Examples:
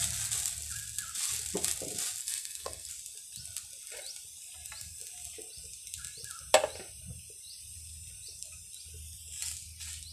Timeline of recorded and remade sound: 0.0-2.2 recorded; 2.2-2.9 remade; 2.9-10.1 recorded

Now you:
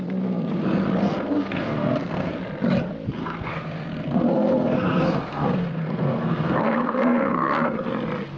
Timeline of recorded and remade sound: 0.0-1.0 recorded; 1.0-2.3 remade; 2.3-3.2 recorded; 3.2-7.9 remade; 7.9-8.4 recorded